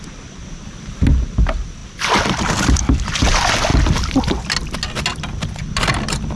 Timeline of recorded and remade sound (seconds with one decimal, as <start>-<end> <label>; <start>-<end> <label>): 0.0-1.8 recorded; 1.8-3.1 remade; 3.1-3.7 recorded; 3.7-4.2 remade; 4.2-5.1 recorded; 5.1-5.9 remade; 5.9-6.4 recorded